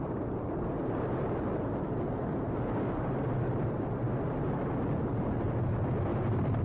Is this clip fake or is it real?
real